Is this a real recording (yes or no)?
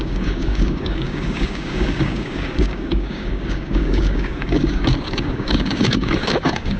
no